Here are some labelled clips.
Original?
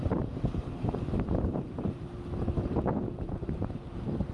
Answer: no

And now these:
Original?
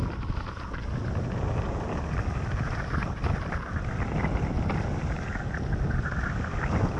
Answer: yes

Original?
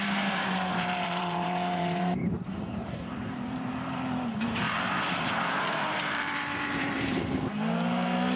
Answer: no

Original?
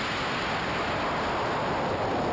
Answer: yes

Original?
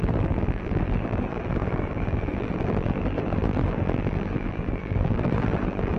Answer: no